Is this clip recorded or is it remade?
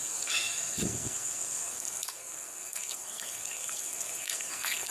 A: remade